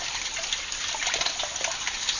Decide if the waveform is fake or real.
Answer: real